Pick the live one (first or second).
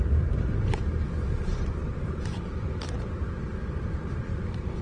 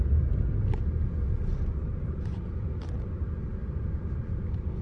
second